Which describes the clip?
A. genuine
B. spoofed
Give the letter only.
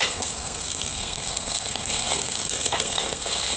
B